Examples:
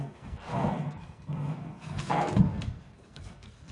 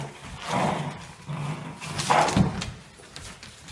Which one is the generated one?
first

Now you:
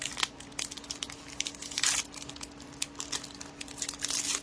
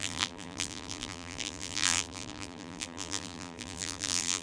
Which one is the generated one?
second